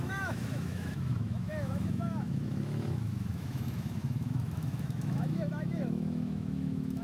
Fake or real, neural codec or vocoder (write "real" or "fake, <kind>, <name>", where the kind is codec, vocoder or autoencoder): fake, autoencoder, DAC-VAE